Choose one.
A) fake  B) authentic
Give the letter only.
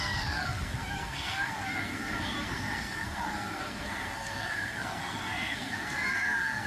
A